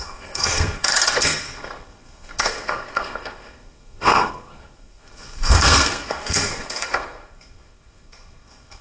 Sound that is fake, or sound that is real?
fake